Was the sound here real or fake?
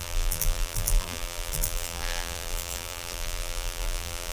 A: fake